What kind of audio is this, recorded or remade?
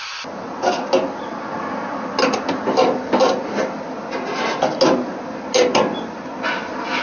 recorded